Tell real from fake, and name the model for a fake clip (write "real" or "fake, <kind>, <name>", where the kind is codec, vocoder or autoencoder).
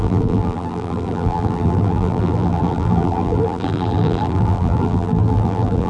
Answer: fake, vocoder, BigVGAN v2